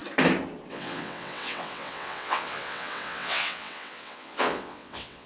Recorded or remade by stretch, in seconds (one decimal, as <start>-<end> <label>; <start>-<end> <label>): 0.0-0.7 recorded; 0.7-5.3 remade